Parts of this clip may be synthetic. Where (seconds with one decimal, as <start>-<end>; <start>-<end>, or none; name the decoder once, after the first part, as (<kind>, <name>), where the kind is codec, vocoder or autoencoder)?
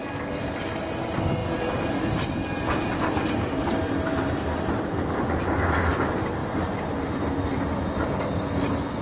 1.4-5.4 (vocoder, BigVGAN v2); 6.4-7.3